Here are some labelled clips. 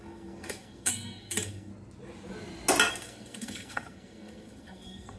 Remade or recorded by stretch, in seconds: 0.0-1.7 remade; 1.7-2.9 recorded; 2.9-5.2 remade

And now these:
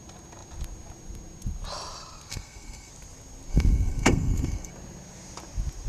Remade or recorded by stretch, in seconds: 0.0-2.3 recorded; 2.3-2.9 remade; 2.9-3.5 recorded; 3.5-4.7 remade; 4.7-5.9 recorded